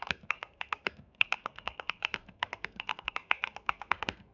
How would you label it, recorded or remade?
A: remade